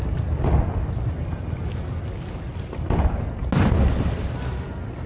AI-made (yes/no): no